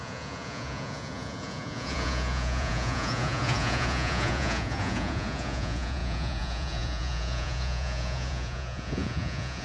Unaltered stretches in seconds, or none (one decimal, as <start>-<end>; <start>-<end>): none